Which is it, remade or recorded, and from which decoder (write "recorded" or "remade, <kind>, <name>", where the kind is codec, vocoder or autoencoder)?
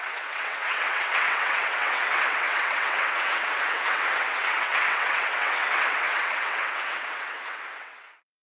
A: remade, vocoder, WaveNeXt